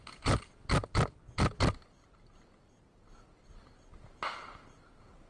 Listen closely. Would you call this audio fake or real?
real